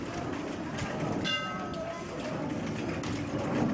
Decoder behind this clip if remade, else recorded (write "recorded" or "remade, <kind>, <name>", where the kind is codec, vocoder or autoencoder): recorded